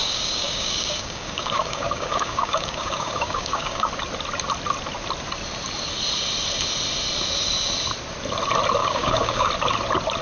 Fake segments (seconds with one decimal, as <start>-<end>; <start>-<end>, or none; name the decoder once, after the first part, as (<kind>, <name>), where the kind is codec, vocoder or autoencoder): 0.0-3.9 (codec, DAC); 8.8-9.5